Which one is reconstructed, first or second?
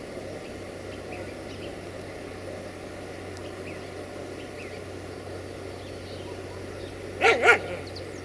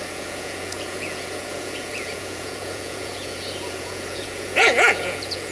second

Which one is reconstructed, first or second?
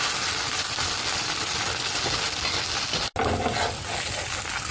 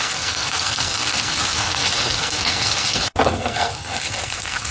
second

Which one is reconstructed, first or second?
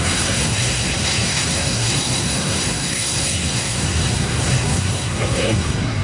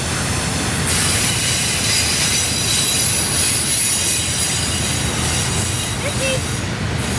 first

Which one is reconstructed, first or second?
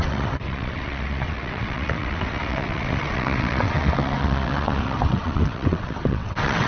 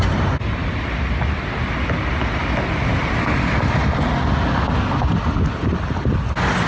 first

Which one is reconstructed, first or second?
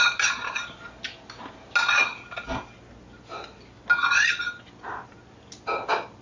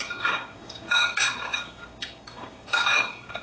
second